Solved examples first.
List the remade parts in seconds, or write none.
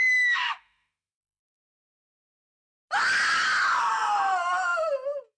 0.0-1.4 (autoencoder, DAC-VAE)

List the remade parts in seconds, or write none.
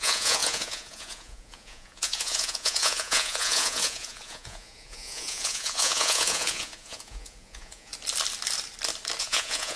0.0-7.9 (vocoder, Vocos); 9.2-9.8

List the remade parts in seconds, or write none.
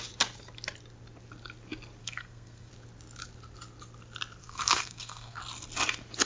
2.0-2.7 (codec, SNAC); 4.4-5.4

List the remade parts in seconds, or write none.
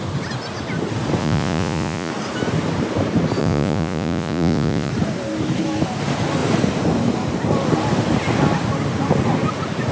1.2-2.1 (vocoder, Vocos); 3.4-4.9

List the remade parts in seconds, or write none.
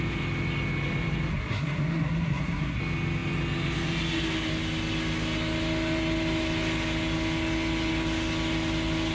1.3-2.8 (codec, SNAC)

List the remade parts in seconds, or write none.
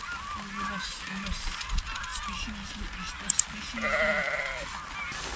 none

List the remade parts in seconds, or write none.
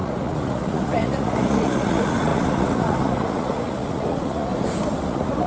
0.0-4.5 (vocoder, Vocos); 5.0-5.5